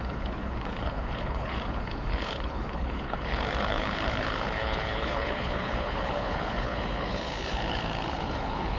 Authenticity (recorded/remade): remade